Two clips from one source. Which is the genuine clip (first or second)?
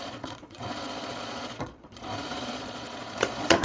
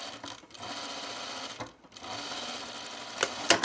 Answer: second